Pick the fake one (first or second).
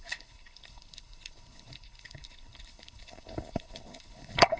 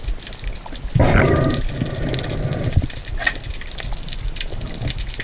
first